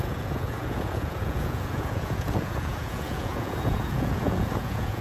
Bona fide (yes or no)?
no